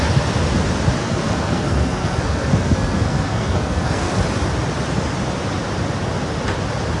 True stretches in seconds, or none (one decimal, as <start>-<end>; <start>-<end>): 0.0-1.0; 4.2-7.0